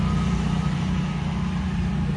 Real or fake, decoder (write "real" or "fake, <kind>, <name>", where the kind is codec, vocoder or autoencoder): fake, vocoder, BigVGAN v2